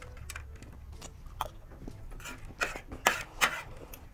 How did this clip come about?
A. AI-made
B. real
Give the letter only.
B